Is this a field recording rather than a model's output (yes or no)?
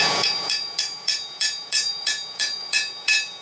no